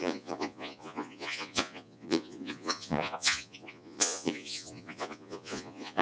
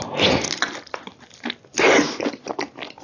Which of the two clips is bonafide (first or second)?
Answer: second